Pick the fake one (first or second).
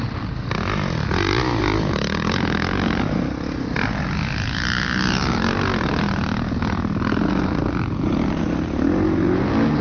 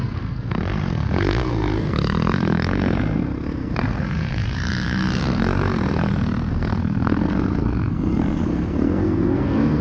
second